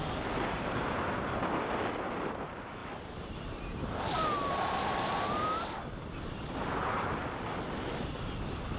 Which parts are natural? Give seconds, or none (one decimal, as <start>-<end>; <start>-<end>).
0.0-8.8